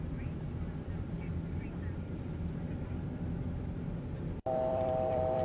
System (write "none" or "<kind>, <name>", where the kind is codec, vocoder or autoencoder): vocoder, BigVGAN v2